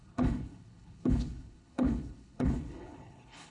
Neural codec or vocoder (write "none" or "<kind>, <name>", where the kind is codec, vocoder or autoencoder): codec, HILCodec